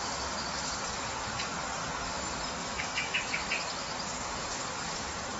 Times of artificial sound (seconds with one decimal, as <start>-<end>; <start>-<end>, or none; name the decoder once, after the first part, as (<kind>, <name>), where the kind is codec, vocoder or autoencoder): 2.6-3.5 (autoencoder, DAC-VAE)